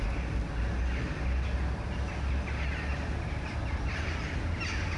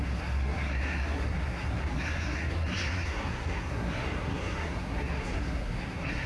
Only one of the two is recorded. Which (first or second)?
first